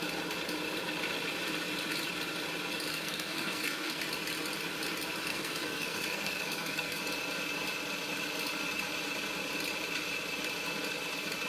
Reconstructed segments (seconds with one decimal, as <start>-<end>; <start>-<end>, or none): 2.9-4.0; 5.3-7.0

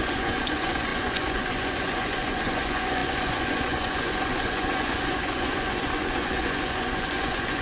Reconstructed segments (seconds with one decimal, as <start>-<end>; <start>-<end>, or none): 0.0-7.6